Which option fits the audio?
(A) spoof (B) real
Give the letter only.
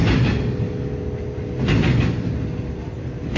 B